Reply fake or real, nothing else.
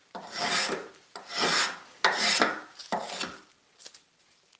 real